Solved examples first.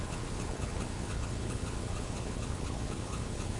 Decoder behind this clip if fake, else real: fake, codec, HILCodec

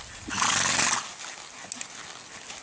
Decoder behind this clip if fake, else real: real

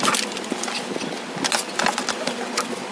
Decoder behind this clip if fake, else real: real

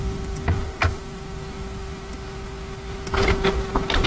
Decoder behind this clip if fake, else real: real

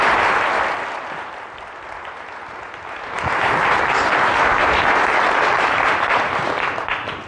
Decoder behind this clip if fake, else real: real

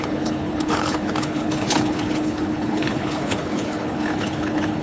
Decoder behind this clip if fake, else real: fake, codec, HILCodec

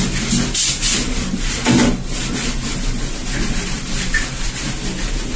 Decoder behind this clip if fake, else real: real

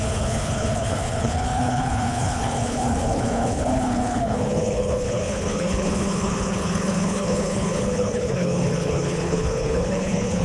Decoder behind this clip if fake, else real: fake, codec, HILCodec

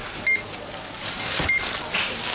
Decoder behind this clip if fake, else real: real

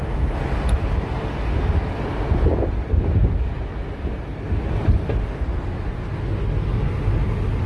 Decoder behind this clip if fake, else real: real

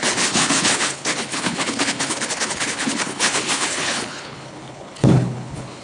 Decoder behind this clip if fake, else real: fake, codec, HILCodec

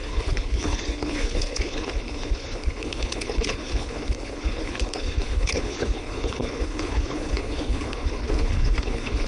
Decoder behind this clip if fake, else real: fake, codec, HILCodec